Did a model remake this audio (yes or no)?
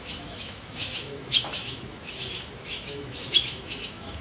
yes